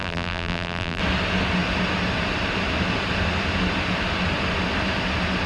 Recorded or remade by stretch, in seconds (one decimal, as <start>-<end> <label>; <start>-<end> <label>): 0.0-1.0 remade; 1.0-5.5 recorded